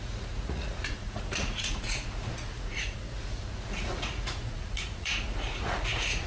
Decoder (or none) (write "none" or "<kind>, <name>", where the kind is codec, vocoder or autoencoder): vocoder, Vocos